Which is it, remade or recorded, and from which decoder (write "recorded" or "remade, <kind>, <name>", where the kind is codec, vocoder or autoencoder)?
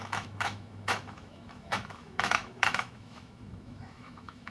remade, autoencoder, DAC-VAE